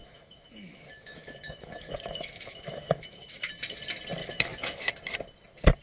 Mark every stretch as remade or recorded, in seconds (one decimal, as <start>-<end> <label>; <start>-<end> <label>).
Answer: 0.0-3.5 remade; 3.5-4.2 recorded; 4.2-4.9 remade; 4.9-5.8 recorded